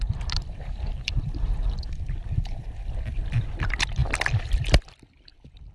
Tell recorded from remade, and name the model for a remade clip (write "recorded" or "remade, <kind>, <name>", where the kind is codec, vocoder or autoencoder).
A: remade, vocoder, BigVGAN v2